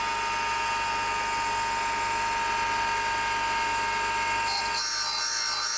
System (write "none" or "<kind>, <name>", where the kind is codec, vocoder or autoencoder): none